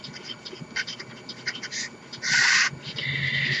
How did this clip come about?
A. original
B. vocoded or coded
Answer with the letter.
A